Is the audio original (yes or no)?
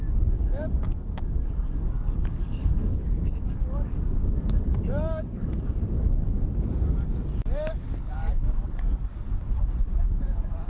no